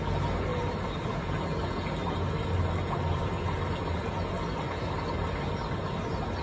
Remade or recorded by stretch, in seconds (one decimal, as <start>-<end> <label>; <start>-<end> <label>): 0.0-6.4 recorded